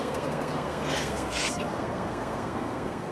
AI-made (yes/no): yes